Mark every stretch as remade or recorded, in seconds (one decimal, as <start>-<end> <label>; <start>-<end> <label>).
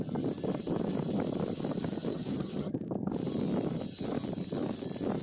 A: 0.0-2.1 recorded; 2.1-2.7 remade; 2.7-5.2 recorded